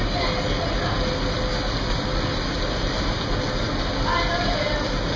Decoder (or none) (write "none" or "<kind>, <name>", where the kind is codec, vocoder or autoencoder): none